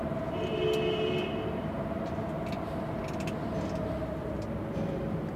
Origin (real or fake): real